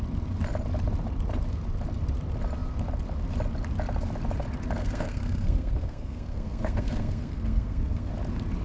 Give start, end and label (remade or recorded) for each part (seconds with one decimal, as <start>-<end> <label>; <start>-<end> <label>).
0.0-4.8 recorded; 4.8-8.1 remade; 8.1-8.6 recorded